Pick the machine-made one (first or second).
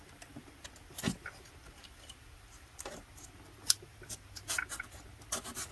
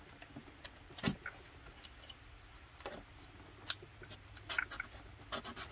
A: first